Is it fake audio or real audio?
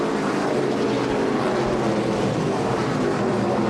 real